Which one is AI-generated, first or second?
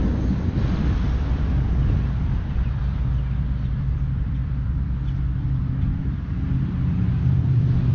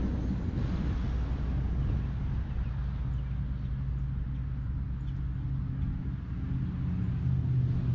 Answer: first